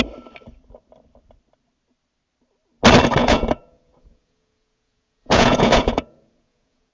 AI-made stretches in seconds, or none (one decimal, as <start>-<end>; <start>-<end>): 3.2-6.9

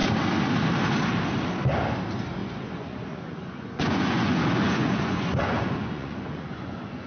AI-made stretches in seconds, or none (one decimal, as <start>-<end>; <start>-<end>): 2.4-7.1

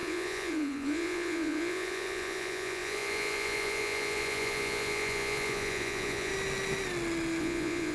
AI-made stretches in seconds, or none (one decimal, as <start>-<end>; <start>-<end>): 0.0-6.3; 7.4-7.9

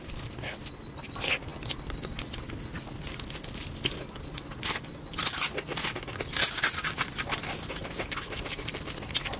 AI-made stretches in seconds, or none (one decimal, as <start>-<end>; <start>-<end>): none